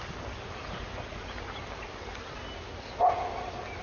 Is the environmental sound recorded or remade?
recorded